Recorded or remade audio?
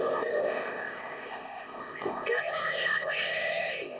remade